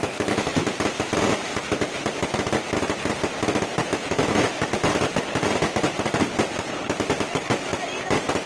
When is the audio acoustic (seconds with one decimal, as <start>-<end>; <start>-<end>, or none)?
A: 0.0-3.8; 4.4-8.5